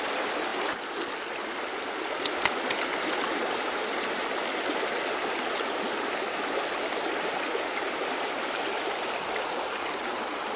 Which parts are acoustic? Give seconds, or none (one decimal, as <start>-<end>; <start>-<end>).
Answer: 0.0-10.6